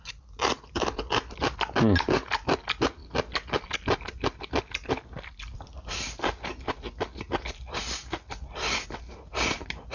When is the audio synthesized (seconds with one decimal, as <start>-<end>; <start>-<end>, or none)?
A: none